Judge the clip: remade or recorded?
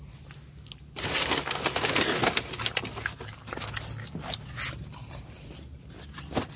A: recorded